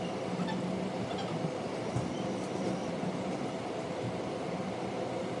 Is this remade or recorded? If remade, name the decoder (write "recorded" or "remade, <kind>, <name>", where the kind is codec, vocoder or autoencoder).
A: recorded